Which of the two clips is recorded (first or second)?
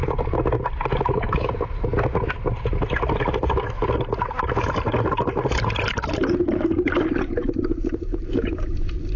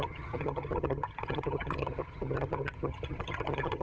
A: first